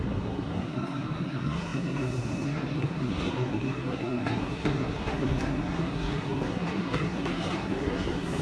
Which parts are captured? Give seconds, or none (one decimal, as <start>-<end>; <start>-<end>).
none